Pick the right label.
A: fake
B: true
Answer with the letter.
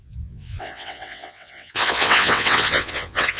A